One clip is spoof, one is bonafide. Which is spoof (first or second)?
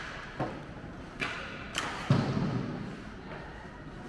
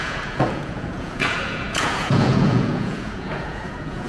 second